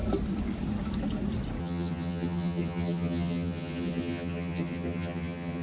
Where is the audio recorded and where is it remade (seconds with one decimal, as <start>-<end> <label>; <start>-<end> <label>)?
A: 0.0-1.6 recorded; 1.6-5.6 remade